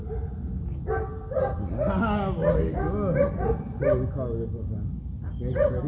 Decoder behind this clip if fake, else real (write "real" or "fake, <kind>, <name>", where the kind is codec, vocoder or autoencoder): real